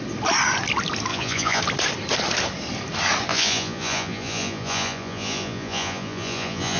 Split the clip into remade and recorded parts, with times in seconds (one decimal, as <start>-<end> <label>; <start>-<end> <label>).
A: 0.0-1.1 recorded; 1.1-1.6 remade; 1.6-3.3 recorded; 3.3-6.8 remade